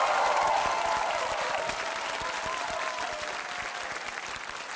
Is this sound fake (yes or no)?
no